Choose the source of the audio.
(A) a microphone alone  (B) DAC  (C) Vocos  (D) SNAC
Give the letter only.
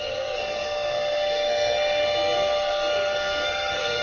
D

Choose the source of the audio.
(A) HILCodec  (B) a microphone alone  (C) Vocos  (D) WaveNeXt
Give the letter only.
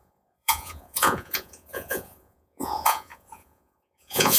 C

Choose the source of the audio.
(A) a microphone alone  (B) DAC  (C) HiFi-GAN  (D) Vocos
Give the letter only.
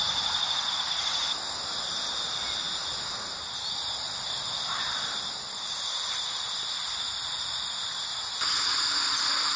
A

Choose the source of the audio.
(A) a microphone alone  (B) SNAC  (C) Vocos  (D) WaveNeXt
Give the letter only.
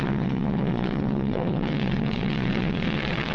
D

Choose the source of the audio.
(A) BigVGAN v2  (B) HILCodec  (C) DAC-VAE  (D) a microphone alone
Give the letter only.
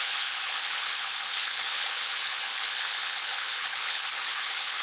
B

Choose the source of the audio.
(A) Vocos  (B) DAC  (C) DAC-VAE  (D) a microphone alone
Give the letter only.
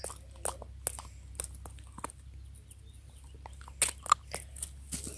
D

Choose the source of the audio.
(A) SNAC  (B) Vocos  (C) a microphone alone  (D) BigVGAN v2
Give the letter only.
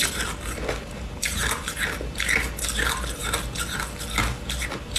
C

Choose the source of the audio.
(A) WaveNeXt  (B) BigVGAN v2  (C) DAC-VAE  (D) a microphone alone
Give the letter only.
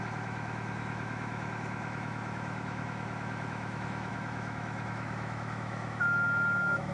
C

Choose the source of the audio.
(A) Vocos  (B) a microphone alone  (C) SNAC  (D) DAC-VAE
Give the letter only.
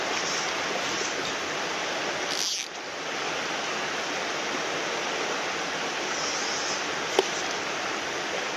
B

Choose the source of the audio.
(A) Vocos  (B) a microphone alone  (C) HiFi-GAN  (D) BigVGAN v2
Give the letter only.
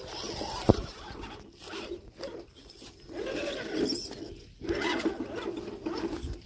B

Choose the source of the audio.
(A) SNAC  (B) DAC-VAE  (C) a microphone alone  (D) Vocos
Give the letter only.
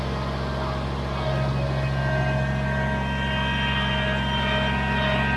C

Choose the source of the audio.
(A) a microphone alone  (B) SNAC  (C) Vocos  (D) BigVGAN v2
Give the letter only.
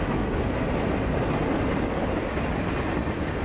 A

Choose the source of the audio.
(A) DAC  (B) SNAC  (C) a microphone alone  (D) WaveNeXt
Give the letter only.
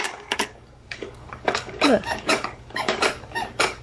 A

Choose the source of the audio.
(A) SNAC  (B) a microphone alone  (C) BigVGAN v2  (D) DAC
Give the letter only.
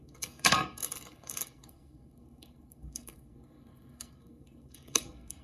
A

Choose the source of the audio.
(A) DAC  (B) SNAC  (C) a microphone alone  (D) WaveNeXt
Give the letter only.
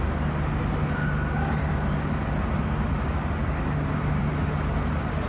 C